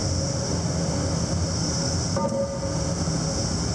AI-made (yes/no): no